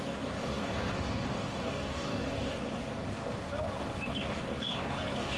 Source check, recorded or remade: remade